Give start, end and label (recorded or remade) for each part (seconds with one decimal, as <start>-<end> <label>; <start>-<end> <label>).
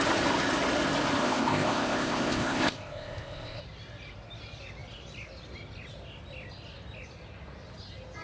0.0-1.2 recorded; 1.2-3.6 remade; 3.6-8.2 recorded